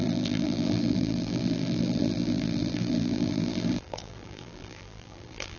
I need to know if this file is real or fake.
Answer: fake